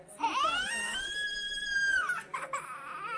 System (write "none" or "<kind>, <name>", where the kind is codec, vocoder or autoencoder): none